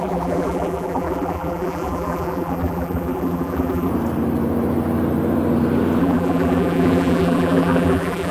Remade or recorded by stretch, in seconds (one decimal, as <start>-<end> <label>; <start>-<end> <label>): 0.0-3.9 remade; 3.9-6.0 recorded; 6.0-8.3 remade